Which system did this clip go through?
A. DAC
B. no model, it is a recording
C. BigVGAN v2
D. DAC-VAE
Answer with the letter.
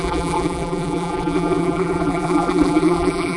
C